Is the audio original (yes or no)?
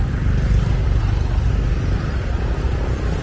yes